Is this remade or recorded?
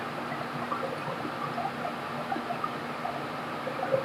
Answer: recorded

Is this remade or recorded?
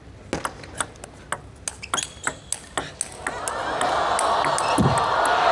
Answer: recorded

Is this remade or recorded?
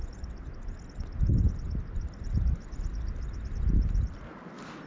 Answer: recorded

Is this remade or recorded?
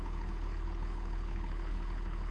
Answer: remade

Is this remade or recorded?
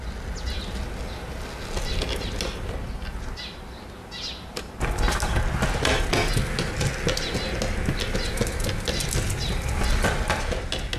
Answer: recorded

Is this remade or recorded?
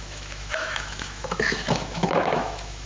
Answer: remade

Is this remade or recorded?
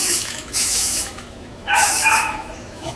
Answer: remade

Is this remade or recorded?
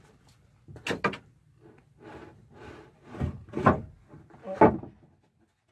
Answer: recorded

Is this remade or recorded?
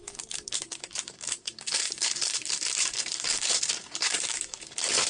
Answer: remade